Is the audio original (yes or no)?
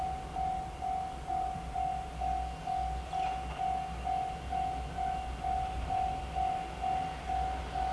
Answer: yes